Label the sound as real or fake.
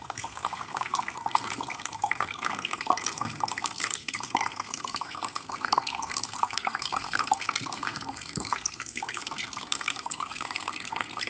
fake